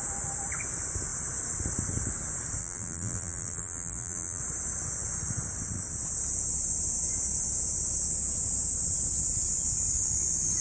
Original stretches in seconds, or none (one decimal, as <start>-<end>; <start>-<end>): 0.0-2.6; 4.4-10.6